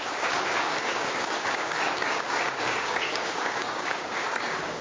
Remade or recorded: remade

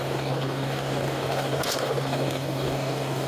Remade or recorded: remade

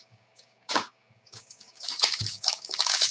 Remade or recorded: remade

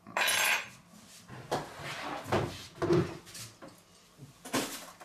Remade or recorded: recorded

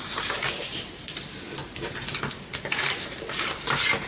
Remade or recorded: recorded